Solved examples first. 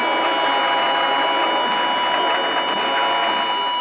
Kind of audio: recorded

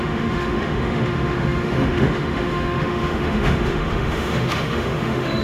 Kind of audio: remade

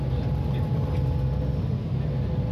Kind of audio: recorded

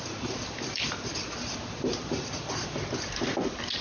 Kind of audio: recorded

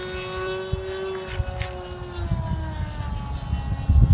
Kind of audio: recorded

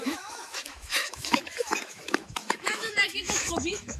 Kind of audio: remade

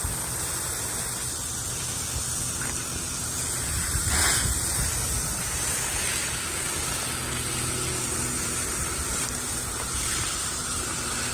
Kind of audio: recorded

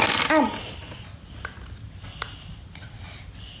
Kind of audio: recorded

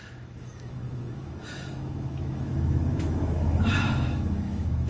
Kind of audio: remade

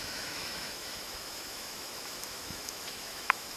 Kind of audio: remade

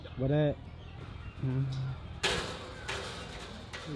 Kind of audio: recorded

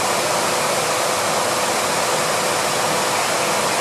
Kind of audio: recorded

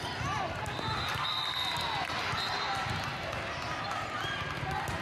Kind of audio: recorded